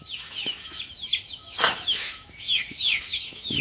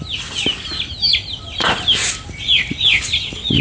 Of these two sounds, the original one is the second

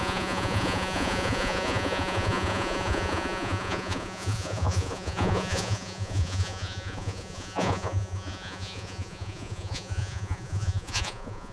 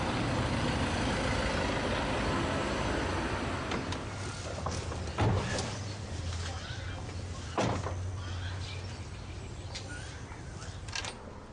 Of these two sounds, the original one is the second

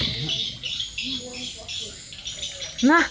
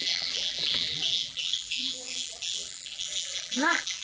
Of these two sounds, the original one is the first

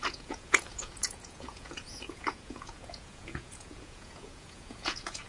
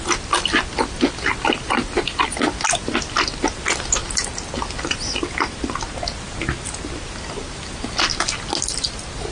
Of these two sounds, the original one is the second